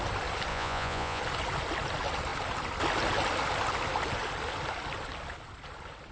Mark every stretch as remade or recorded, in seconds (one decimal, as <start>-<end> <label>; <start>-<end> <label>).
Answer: 0.0-0.5 recorded; 0.5-1.2 remade; 1.2-6.1 recorded